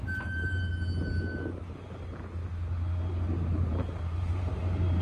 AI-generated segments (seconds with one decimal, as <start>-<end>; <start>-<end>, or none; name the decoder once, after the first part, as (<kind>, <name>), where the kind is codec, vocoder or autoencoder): 0.0-0.7 (vocoder, BigVGAN v2); 3.7-5.0